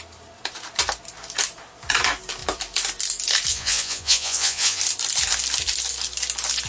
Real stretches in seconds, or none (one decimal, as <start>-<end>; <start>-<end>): 0.0-3.5; 4.8-6.7